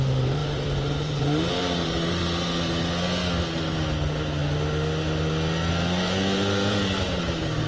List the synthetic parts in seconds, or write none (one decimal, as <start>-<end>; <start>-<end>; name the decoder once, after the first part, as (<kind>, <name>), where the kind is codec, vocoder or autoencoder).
0.0-2.2 (vocoder, BigVGAN v2); 5.7-7.7